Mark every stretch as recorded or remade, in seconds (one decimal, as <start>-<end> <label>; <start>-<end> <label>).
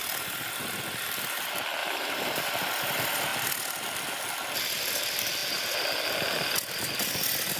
0.0-1.8 recorded; 1.8-2.5 remade; 2.5-7.6 recorded